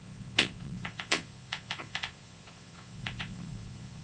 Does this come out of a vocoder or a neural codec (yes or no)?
yes